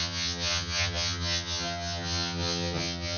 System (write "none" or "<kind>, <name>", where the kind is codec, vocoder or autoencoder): vocoder, HiFi-GAN